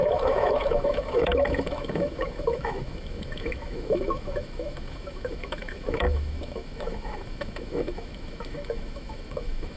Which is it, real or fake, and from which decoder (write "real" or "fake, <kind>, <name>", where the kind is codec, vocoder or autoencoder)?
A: fake, autoencoder, DAC-VAE